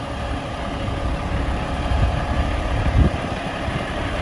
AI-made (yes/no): yes